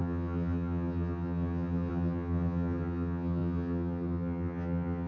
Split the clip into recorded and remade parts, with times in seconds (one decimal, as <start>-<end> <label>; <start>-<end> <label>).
0.0-5.1 remade